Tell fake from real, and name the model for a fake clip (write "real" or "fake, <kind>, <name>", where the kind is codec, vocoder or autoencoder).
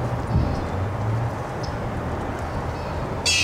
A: real